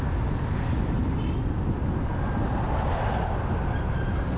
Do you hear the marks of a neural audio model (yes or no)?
no